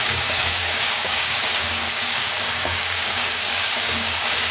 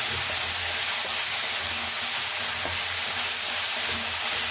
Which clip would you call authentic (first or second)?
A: second